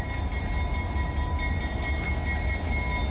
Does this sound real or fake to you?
real